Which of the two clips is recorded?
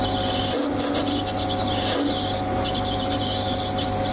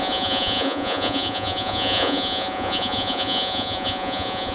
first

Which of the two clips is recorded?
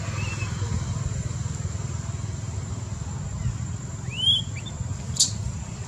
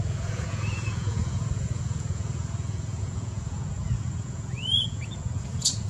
first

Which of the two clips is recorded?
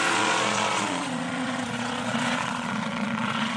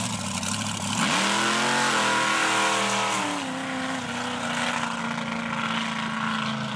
second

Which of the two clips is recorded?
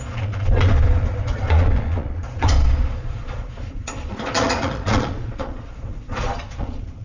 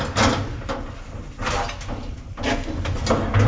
second